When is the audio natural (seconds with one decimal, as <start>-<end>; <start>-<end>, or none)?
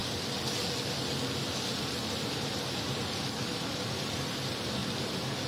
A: 0.0-3.0; 4.8-5.5